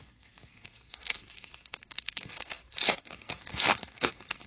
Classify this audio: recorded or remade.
remade